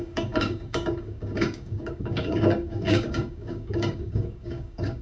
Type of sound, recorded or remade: remade